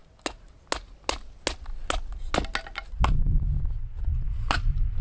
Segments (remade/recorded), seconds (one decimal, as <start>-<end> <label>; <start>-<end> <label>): 0.0-5.0 recorded